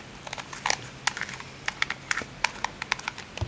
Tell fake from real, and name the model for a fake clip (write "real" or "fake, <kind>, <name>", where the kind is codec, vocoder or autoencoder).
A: real